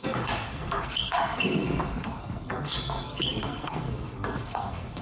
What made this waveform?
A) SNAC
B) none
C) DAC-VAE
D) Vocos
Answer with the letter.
A